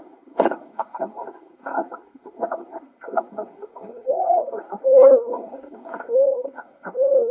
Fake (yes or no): yes